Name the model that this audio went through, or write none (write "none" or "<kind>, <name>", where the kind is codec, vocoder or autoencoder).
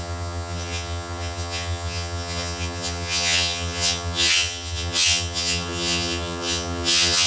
vocoder, HiFi-GAN